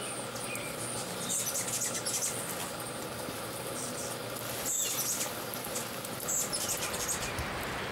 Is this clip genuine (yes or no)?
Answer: yes